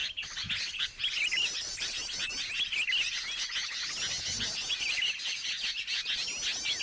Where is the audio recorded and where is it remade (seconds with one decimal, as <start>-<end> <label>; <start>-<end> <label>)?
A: 0.0-2.3 remade; 2.3-4.7 recorded; 4.7-5.7 remade; 5.7-6.8 recorded